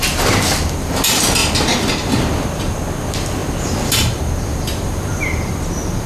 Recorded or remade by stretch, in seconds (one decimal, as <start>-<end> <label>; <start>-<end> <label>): 0.0-4.5 recorded; 4.5-5.3 remade; 5.3-6.1 recorded